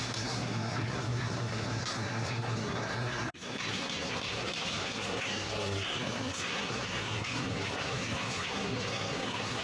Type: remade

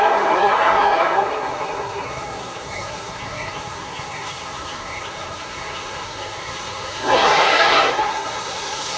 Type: remade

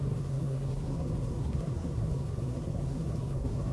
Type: remade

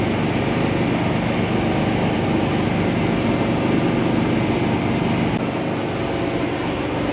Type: recorded